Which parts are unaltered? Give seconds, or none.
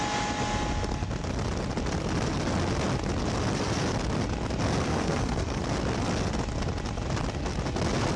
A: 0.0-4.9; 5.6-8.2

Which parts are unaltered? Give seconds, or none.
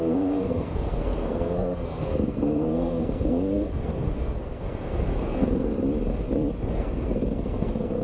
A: 5.7-6.7